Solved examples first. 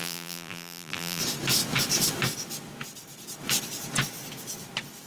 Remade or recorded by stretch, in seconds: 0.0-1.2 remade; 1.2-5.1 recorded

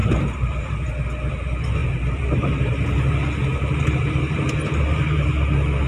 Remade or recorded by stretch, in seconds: 0.0-0.9 remade; 0.9-1.8 recorded; 1.8-3.1 remade; 3.1-3.5 recorded; 3.5-5.3 remade; 5.3-5.9 recorded

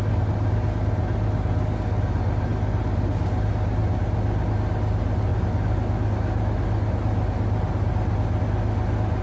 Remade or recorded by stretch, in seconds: 0.0-9.2 recorded

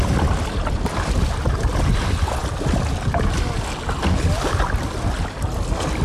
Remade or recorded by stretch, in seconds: 0.0-6.0 recorded

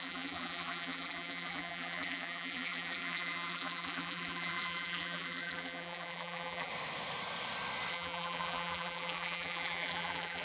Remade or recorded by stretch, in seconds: 0.0-6.7 remade; 6.7-7.9 recorded; 7.9-10.4 remade

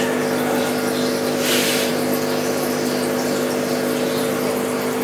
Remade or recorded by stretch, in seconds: 0.0-5.0 recorded

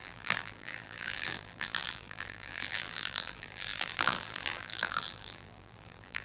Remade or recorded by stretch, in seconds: 0.0-6.2 remade

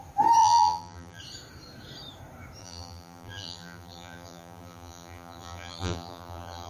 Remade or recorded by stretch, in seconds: 0.0-0.4 recorded; 0.4-1.2 remade; 1.2-2.6 recorded; 2.6-6.7 remade